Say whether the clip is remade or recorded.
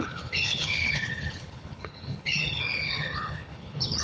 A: remade